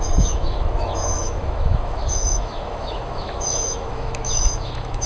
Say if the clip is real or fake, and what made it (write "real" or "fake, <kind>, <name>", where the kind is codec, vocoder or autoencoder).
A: fake, autoencoder, DAC-VAE